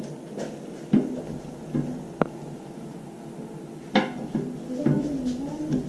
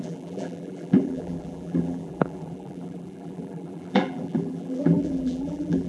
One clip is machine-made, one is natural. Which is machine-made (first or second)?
second